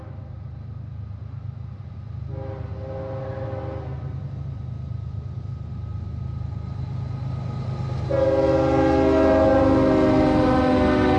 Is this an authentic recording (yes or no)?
yes